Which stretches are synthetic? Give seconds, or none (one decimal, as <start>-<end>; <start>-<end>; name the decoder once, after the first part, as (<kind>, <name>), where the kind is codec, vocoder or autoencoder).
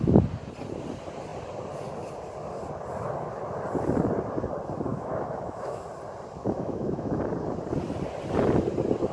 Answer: 4.9-5.8 (autoencoder, DAC-VAE); 6.4-7.2